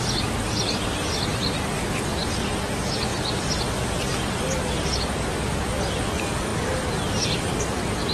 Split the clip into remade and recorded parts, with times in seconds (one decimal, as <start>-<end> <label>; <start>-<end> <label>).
0.0-8.1 recorded